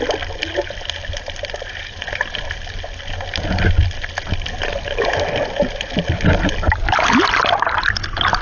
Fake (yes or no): no